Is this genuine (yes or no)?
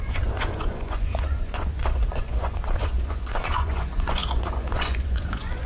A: no